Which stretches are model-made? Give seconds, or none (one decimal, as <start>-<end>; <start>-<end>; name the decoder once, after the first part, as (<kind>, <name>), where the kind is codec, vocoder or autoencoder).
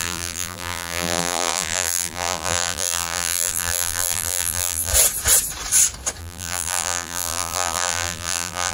0.0-4.9 (vocoder, BigVGAN v2); 6.2-8.7